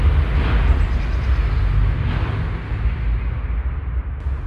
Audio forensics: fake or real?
real